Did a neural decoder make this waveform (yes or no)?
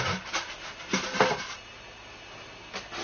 no